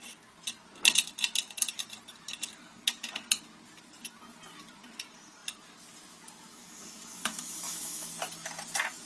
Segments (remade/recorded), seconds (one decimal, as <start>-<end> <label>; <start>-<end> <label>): 0.0-6.5 recorded; 6.5-8.1 remade; 8.1-9.1 recorded